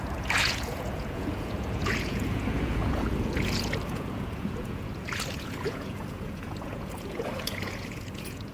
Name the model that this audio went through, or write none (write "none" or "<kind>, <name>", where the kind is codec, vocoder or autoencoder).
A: vocoder, Vocos